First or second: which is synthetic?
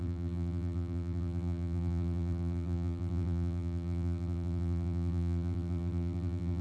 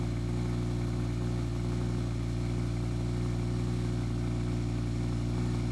first